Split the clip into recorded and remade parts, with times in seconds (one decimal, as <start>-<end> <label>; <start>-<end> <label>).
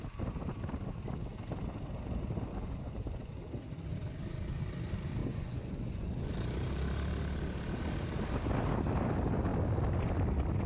0.0-2.5 recorded; 2.5-3.3 remade; 3.3-5.2 recorded; 5.2-6.3 remade; 6.3-10.7 recorded